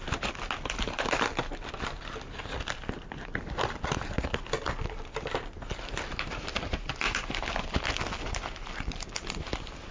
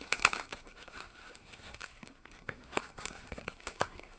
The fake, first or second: second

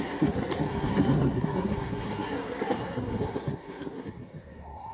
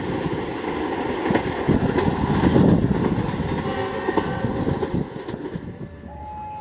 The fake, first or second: first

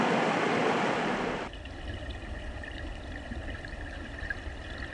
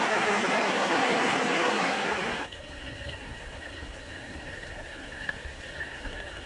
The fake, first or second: second